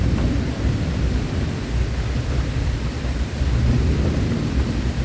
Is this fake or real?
fake